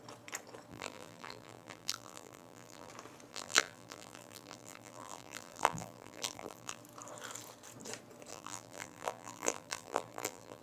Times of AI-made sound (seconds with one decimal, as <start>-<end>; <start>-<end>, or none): 0.7-2.9; 3.3-6.8; 8.3-10.6